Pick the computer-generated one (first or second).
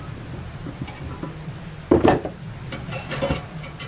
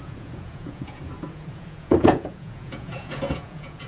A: second